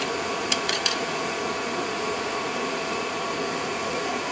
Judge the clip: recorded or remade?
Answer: remade